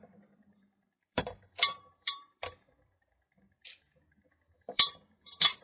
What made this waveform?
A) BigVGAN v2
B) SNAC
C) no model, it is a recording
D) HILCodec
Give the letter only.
A